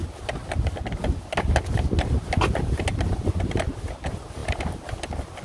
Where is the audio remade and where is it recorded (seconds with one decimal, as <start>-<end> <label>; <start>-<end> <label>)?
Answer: 0.0-5.4 recorded